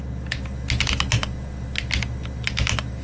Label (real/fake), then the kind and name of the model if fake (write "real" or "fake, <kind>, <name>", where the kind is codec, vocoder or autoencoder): real